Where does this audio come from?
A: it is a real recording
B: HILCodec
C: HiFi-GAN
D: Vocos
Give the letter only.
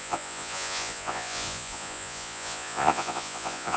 D